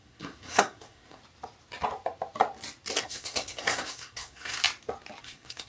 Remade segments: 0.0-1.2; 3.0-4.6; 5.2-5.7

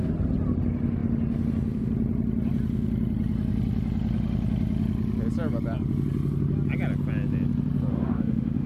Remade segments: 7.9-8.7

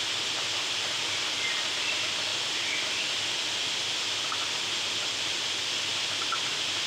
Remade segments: none

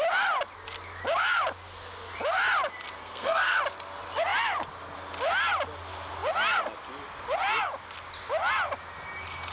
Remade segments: 3.0-3.6

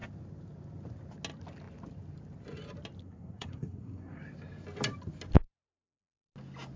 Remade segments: 3.0-4.2

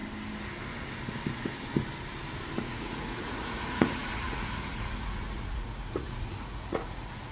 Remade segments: 2.7-7.3

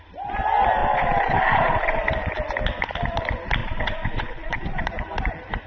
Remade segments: 0.8-2.0; 3.6-4.9

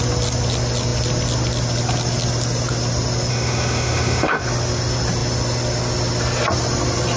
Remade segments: 3.3-4.4